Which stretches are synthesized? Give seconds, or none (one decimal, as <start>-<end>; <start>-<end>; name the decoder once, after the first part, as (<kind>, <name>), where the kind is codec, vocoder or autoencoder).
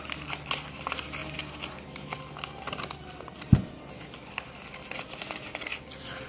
none